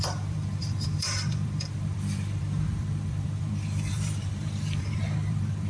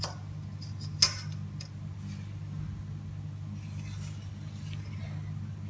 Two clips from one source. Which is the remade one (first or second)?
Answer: first